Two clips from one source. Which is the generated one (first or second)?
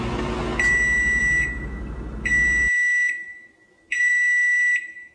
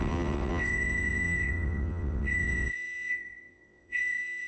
second